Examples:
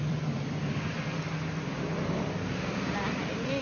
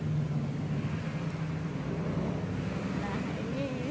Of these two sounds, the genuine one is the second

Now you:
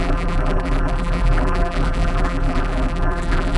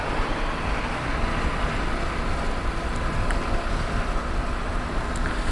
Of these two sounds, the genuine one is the second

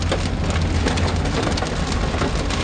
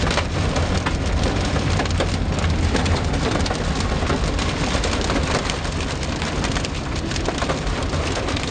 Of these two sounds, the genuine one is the first